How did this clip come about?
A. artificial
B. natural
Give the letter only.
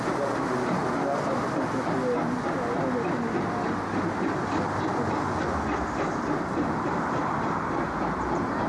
B